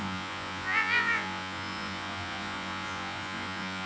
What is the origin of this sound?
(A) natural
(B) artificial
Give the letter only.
B